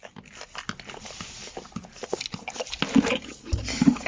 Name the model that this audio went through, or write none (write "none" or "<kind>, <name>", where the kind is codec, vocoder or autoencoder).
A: none